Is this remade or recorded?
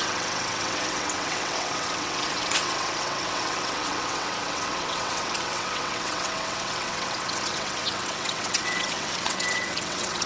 remade